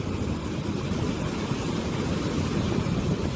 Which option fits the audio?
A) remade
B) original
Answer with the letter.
B